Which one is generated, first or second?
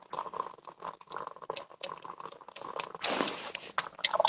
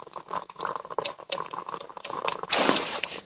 second